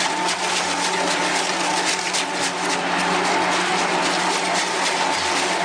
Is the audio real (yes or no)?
yes